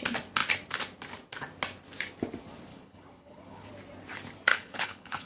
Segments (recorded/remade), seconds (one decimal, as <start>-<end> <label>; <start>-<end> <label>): 0.0-2.7 recorded; 2.7-3.7 remade; 3.7-4.5 recorded; 4.5-5.3 remade